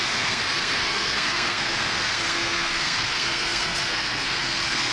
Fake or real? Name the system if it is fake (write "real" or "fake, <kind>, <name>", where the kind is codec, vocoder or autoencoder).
fake, codec, SNAC